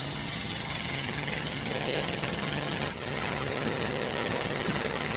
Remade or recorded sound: remade